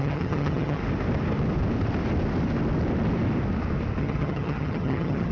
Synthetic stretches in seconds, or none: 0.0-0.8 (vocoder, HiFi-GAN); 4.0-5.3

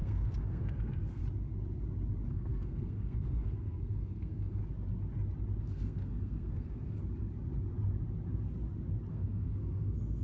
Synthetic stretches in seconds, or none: 0.0-1.2 (codec, SNAC); 2.3-4.6; 5.6-7.0; 9.1-10.2

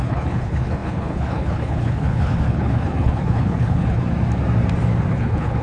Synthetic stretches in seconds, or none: 0.0-4.0 (codec, HILCodec); 5.1-5.6